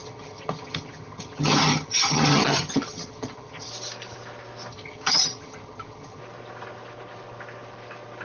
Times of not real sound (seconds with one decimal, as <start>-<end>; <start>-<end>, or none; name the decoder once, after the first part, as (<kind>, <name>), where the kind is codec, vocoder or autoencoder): 0.0-3.7 (vocoder, HiFi-GAN); 4.7-6.2